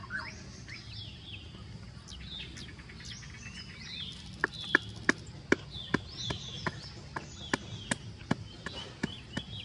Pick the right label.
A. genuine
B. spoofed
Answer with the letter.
A